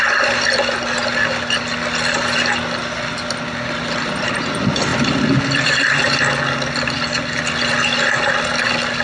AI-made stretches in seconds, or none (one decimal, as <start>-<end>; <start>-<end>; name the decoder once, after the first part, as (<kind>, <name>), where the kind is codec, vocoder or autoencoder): none